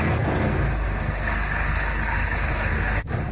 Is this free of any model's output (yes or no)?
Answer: no